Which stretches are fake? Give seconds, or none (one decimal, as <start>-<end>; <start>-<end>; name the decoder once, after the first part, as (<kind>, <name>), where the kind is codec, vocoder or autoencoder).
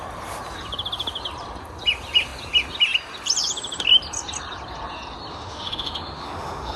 5.3-6.8 (autoencoder, DAC-VAE)